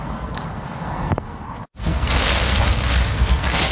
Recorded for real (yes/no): no